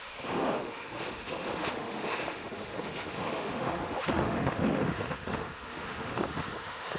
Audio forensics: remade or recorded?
remade